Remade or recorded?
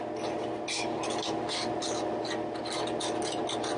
recorded